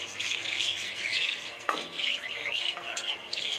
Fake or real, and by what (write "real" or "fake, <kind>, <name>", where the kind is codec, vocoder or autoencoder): fake, codec, SNAC